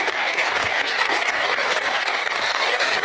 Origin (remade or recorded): remade